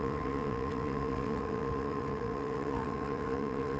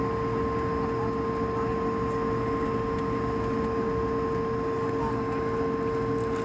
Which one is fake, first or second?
first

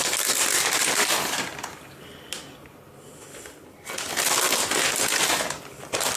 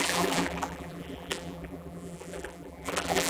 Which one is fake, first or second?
second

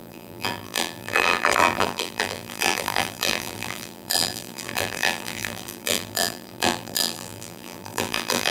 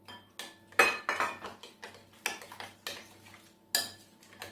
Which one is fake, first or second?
first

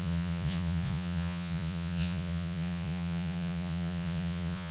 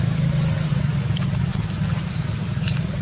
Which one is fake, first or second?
first